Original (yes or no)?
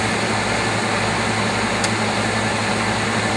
yes